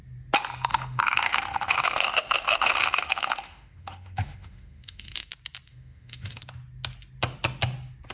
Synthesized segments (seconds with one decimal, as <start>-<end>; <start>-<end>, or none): 0.7-5.3; 5.7-6.4